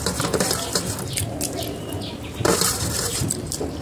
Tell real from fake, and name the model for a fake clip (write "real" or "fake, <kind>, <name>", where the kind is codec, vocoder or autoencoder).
real